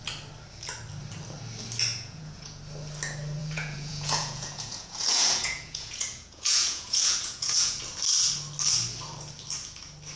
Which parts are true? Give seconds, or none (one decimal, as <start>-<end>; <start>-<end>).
0.0-1.9; 2.6-3.4; 7.8-10.2